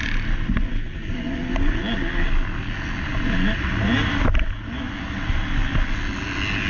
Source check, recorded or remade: recorded